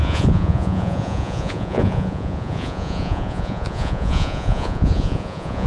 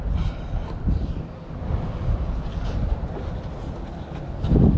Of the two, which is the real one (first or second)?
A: second